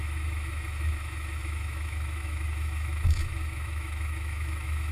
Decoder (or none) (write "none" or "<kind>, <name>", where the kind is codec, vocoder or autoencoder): autoencoder, DAC-VAE